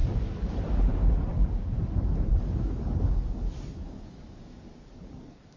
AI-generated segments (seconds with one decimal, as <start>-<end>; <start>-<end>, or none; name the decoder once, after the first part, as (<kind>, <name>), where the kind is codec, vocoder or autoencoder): 0.0-0.6 (codec, DAC); 1.3-1.8; 2.3-5.6